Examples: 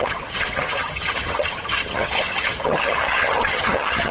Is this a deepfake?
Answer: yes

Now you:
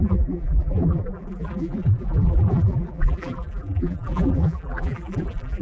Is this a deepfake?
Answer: yes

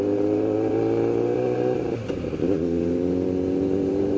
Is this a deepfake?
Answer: yes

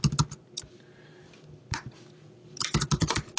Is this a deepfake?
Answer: no